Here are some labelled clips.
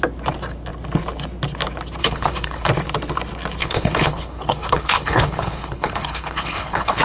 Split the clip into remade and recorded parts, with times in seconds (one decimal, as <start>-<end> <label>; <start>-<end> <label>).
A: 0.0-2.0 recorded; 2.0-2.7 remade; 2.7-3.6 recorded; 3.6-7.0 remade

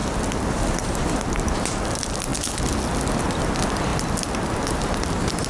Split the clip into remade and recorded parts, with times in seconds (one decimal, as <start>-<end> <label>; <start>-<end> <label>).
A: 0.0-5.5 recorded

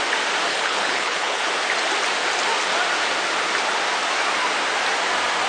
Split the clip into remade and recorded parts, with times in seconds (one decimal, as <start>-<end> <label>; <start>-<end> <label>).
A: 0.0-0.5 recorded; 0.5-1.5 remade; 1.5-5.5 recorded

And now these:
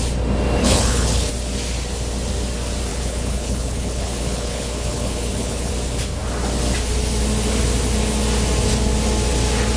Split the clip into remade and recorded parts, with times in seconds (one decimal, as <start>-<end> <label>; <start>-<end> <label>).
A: 0.0-0.6 recorded; 0.6-1.3 remade; 1.3-2.9 recorded; 2.9-5.7 remade; 5.7-9.8 recorded